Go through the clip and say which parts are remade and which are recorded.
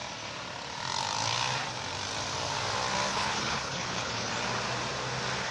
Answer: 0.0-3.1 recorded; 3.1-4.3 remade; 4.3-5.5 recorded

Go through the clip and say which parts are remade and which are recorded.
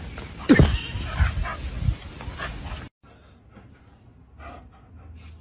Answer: 0.0-5.4 recorded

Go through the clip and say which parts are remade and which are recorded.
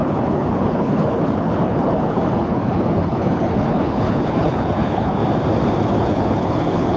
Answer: 0.0-5.2 remade; 5.2-5.8 recorded; 5.8-7.0 remade